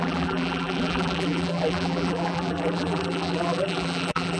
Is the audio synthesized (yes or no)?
yes